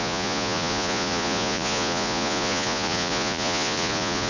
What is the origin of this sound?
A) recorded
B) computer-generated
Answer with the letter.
B